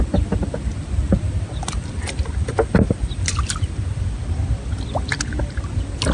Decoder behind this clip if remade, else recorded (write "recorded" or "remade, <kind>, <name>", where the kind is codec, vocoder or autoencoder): recorded